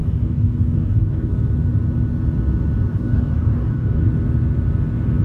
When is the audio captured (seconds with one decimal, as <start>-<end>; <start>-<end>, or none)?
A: 1.3-2.9; 4.1-5.2